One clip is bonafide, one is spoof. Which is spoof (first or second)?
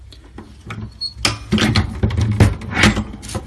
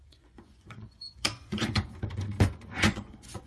second